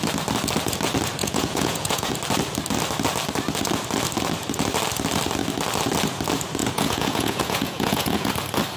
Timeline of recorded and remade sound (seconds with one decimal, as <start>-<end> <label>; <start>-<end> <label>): 0.0-1.2 recorded; 1.2-2.1 remade; 2.1-6.6 recorded; 6.6-8.3 remade; 8.3-8.8 recorded